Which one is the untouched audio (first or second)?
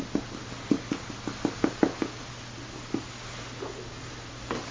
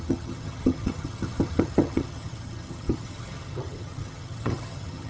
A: first